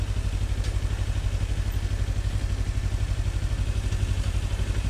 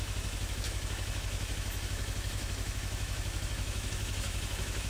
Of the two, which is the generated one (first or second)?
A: second